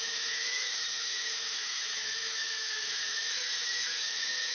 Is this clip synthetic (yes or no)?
yes